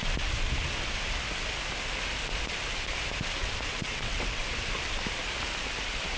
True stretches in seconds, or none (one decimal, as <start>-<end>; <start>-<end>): 0.0-3.7; 4.4-6.2